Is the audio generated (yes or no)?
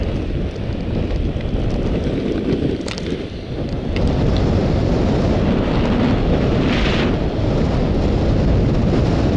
no